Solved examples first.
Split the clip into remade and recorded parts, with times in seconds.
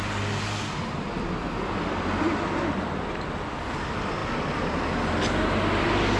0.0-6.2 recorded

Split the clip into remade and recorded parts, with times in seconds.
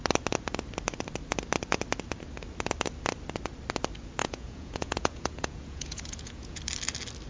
0.0-4.2 recorded; 4.2-6.6 remade; 6.6-7.3 recorded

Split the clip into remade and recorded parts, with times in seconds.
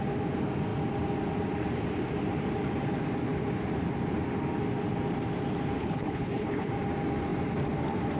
0.0-5.8 recorded; 5.8-6.7 remade; 6.7-8.2 recorded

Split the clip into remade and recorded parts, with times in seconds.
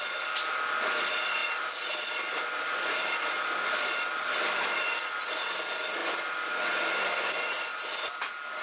0.0-8.6 recorded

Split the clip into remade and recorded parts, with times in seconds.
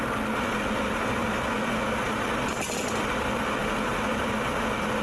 0.0-5.0 recorded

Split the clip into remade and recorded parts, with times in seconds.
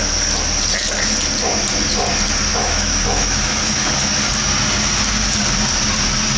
0.0-2.5 recorded; 2.5-3.9 remade; 3.9-6.4 recorded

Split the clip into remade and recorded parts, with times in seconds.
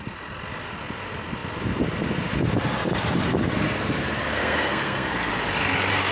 0.0-4.3 recorded; 4.3-5.3 remade; 5.3-6.1 recorded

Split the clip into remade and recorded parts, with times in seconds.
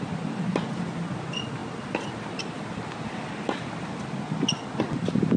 0.0-5.4 recorded